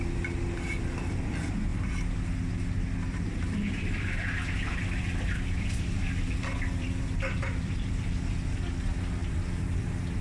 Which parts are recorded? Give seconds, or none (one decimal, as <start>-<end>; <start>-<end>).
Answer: 0.0-4.7; 7.9-9.2